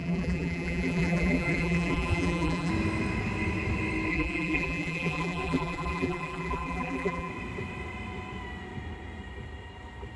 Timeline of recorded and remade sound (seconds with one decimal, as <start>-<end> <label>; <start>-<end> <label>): 0.0-2.7 remade; 2.7-4.1 recorded; 4.1-7.3 remade; 7.3-10.2 recorded